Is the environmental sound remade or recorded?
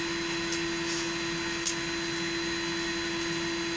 recorded